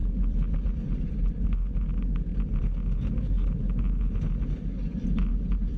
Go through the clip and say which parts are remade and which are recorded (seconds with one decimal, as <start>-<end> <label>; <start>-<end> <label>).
0.0-5.8 recorded